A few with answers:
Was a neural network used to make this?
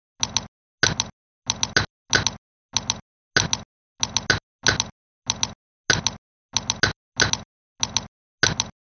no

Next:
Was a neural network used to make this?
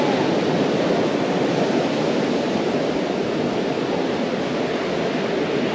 no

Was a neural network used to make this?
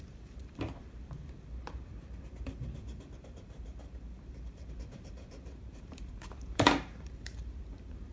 yes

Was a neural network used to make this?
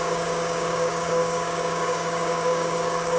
yes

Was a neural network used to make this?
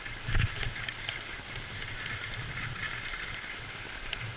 no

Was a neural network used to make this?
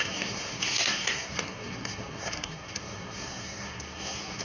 yes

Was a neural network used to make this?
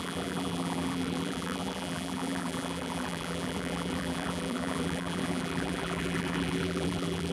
yes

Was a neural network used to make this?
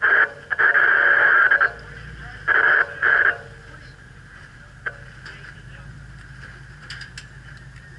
no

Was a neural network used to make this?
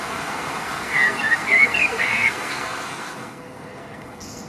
yes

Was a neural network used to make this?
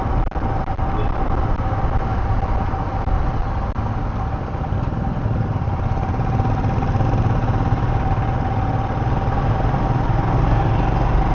no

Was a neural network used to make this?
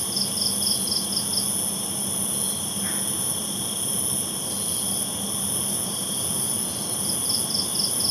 no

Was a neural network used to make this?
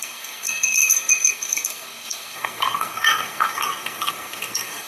yes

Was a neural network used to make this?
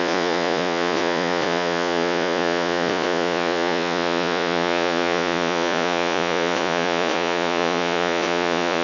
yes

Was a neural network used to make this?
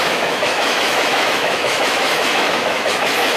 yes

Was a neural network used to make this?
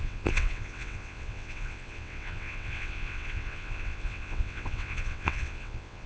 yes